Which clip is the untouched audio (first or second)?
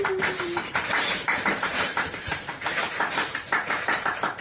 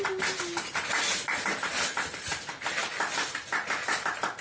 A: second